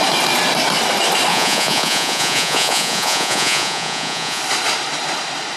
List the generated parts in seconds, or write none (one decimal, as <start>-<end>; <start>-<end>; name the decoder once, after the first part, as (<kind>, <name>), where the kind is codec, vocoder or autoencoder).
1.3-4.4 (vocoder, Vocos)